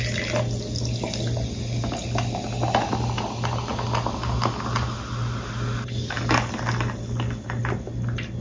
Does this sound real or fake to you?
real